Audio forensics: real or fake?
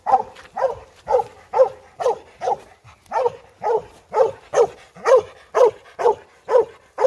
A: real